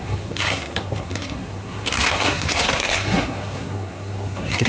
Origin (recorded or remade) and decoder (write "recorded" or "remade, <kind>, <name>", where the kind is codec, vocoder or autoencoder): remade, codec, SNAC